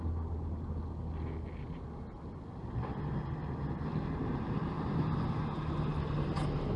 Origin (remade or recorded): recorded